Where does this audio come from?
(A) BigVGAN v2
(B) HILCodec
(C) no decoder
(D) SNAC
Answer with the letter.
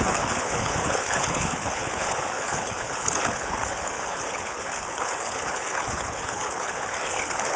B